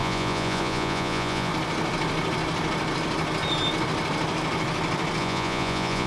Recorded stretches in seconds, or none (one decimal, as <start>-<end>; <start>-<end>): 1.5-5.2